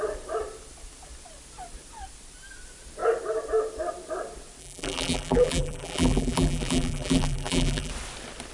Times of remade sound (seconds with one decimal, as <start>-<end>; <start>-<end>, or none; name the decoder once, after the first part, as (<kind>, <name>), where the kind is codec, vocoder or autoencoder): 4.6-7.9 (vocoder, BigVGAN v2)